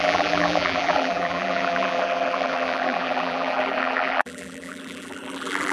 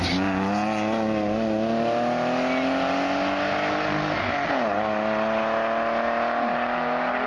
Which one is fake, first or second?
first